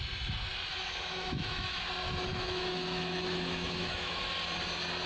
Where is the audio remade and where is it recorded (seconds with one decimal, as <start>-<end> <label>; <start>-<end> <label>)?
0.0-0.7 recorded; 0.7-1.8 remade; 1.8-2.3 recorded; 2.3-4.2 remade; 4.2-5.1 recorded

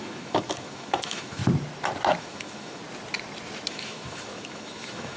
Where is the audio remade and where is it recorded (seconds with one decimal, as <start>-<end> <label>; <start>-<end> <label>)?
0.0-1.4 remade; 1.4-2.2 recorded; 2.2-2.8 remade; 2.8-3.7 recorded; 3.7-5.2 remade

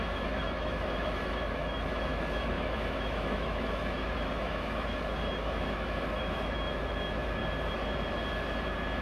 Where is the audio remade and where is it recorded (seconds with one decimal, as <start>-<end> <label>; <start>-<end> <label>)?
0.0-7.4 remade; 7.4-9.0 recorded

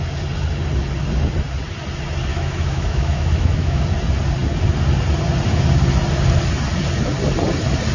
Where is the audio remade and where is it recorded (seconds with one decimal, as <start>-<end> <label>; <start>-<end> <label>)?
0.0-2.3 recorded; 2.3-3.8 remade; 3.8-7.9 recorded

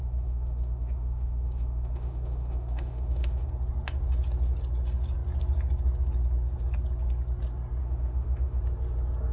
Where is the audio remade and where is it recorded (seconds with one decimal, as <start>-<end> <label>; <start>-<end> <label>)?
0.0-3.5 remade; 3.5-7.8 recorded; 7.8-8.6 remade; 8.6-9.3 recorded

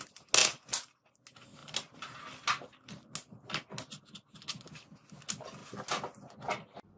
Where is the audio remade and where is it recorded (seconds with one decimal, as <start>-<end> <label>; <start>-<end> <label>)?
0.0-7.0 recorded

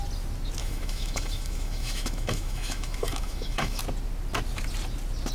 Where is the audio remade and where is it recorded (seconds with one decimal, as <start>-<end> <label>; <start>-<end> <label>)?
0.0-0.6 recorded; 0.6-3.8 remade; 3.8-5.3 recorded